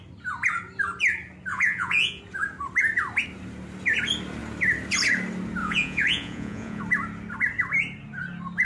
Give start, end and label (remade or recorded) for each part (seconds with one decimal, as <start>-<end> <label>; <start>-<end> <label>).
0.0-1.5 recorded; 1.5-2.2 remade; 2.2-5.6 recorded; 5.6-6.8 remade; 6.8-8.6 recorded